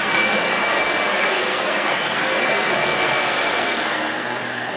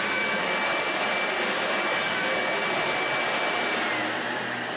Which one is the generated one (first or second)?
first